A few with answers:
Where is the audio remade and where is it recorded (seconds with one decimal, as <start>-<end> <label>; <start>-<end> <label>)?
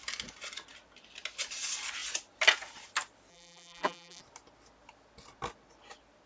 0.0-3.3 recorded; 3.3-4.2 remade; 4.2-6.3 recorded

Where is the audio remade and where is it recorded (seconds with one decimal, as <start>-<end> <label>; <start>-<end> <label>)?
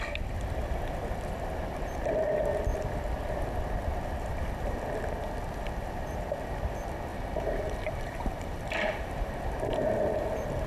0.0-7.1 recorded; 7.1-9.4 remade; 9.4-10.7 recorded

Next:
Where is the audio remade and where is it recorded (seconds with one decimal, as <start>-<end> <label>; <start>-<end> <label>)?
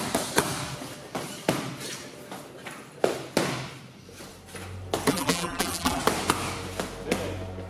0.0-5.1 recorded; 5.1-6.0 remade; 6.0-7.7 recorded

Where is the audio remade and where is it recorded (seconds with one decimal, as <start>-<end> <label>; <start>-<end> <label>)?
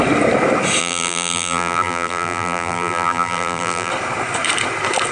0.0-0.8 recorded; 0.8-3.9 remade; 3.9-5.1 recorded